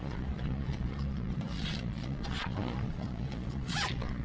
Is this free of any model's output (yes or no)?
no